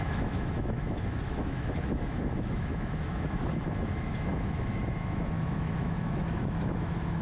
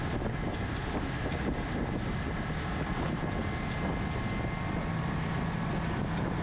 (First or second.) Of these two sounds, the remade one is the first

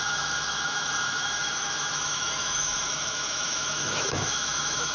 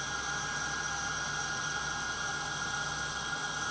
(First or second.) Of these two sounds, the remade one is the first